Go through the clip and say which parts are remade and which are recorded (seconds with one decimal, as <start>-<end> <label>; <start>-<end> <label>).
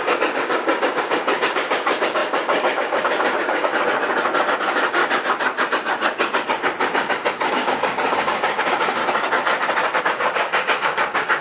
0.0-3.7 remade; 3.7-4.5 recorded; 4.5-5.0 remade; 5.0-7.5 recorded; 7.5-9.0 remade; 9.0-10.0 recorded; 10.0-11.4 remade